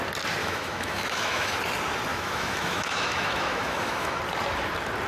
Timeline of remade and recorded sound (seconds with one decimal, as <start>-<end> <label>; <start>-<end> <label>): 0.0-0.4 recorded; 0.4-1.6 remade; 1.6-2.1 recorded; 2.1-4.2 remade; 4.2-5.1 recorded

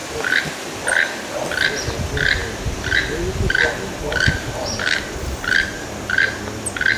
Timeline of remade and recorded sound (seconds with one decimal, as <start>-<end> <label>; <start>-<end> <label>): 0.0-7.0 recorded

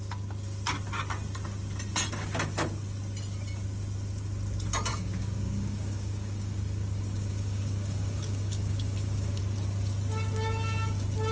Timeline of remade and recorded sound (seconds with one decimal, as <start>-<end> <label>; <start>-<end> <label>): 0.0-4.9 recorded; 4.9-9.4 remade; 9.4-11.3 recorded